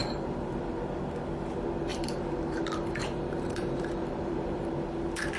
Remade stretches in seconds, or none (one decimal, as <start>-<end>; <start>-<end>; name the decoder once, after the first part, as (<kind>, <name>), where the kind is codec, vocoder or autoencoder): 0.0-0.8 (vocoder, BigVGAN v2); 1.9-4.7